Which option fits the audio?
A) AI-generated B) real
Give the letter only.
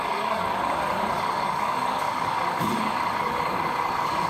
A